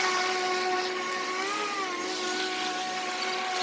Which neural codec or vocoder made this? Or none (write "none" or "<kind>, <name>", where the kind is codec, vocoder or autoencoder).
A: none